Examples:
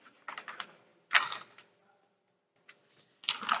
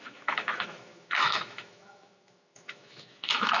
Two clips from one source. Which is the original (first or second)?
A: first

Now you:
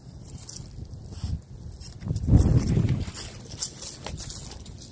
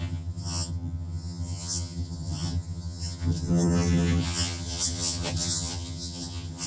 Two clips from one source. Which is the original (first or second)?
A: first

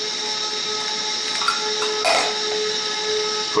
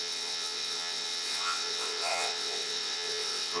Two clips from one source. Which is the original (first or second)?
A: first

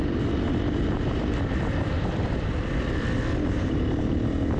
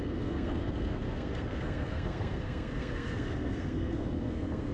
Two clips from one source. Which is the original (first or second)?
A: first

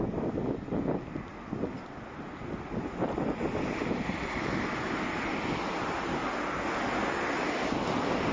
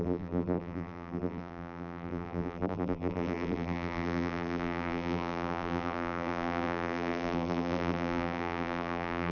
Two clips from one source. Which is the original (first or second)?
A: first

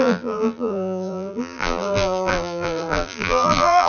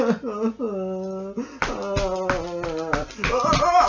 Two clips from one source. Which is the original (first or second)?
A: second